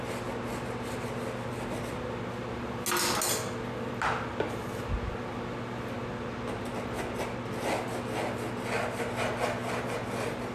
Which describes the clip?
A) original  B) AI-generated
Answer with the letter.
A